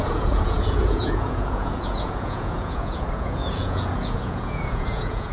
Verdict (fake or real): fake